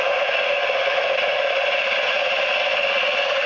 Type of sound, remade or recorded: recorded